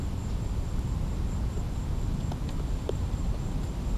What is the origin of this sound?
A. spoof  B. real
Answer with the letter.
B